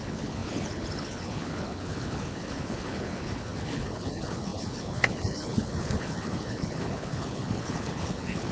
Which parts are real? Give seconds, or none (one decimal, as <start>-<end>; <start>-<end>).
none